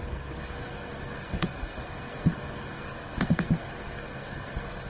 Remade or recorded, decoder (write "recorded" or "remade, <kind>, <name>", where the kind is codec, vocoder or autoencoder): remade, codec, SNAC